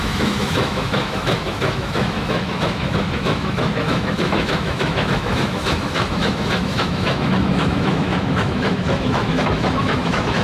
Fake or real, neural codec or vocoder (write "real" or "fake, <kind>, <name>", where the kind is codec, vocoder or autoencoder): fake, autoencoder, DAC-VAE